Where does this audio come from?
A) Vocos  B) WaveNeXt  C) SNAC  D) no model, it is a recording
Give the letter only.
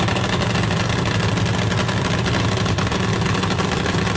D